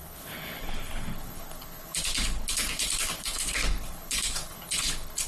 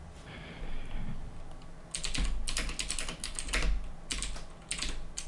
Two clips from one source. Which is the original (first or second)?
second